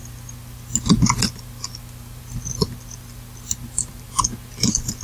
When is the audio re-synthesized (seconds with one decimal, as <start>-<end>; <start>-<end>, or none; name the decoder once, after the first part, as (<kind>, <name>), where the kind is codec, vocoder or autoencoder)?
none